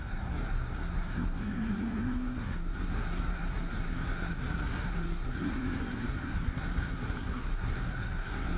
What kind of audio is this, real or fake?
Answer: fake